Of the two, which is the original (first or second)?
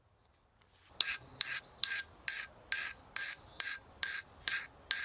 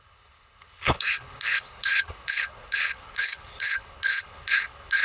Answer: first